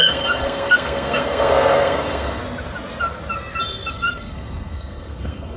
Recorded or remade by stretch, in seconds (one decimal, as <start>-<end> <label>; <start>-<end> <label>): 0.0-2.4 remade; 2.4-3.9 recorded; 3.9-5.6 remade